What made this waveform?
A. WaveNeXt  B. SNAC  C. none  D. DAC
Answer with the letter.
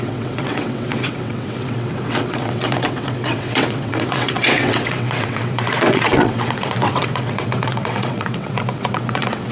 A